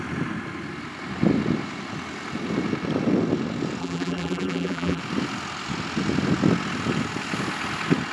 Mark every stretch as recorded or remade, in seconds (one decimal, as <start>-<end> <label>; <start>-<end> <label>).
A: 0.0-3.8 recorded; 3.8-5.0 remade; 5.0-8.1 recorded